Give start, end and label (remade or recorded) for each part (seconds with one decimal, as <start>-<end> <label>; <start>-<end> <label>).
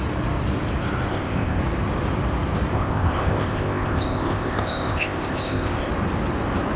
0.0-1.1 recorded; 1.1-1.6 remade; 1.6-2.7 recorded; 2.7-5.9 remade; 5.9-6.8 recorded